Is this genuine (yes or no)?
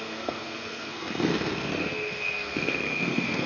no